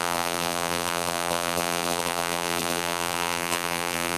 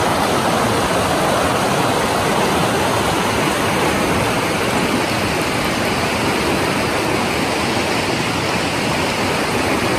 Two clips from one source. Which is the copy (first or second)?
first